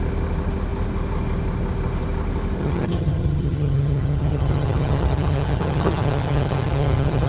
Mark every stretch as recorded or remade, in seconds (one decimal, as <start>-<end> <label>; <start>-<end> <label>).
0.0-2.6 recorded; 2.6-7.3 remade